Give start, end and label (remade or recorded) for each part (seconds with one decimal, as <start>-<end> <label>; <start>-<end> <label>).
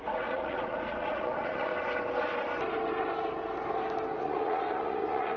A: 0.0-1.7 remade; 1.7-4.2 recorded; 4.2-5.4 remade